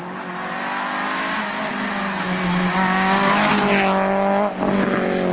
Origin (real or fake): real